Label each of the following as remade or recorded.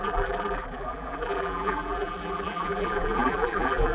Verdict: remade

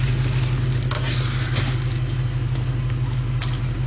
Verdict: recorded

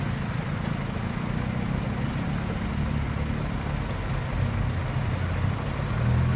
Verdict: recorded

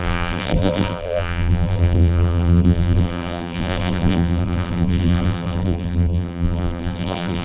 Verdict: remade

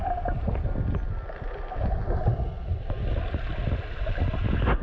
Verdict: recorded